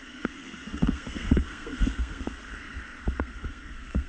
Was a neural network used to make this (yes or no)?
yes